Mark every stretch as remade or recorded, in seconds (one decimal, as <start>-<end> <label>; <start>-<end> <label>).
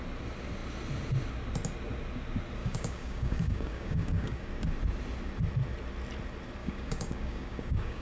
0.0-2.6 recorded; 2.6-4.5 remade; 4.5-6.6 recorded; 6.6-8.0 remade